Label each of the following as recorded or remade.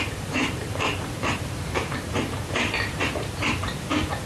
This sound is remade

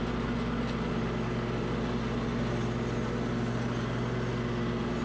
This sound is recorded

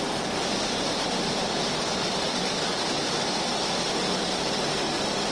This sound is recorded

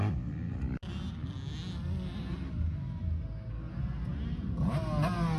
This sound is recorded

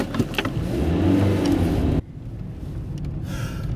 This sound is recorded